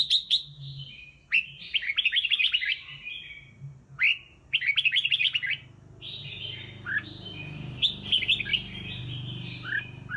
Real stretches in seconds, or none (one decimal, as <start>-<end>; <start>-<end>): 0.0-10.2